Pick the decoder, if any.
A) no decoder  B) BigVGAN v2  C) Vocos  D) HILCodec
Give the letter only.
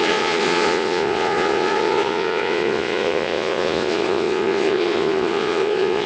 C